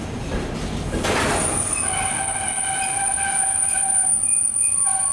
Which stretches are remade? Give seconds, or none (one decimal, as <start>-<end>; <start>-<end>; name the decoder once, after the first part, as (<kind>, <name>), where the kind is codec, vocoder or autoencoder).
none